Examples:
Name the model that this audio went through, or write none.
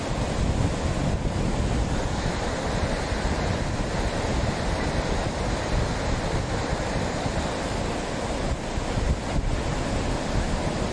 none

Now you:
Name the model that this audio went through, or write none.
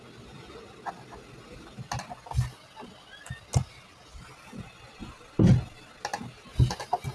none